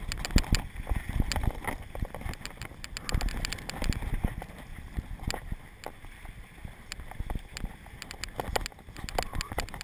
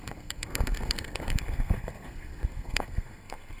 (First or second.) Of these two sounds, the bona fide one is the first